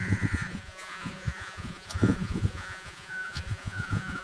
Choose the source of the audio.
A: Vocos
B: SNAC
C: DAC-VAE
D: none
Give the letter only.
A